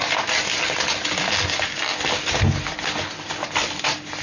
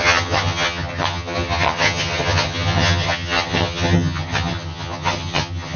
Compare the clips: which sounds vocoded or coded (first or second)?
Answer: second